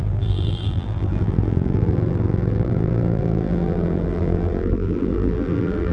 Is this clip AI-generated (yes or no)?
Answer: yes